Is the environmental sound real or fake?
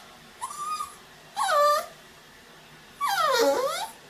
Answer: real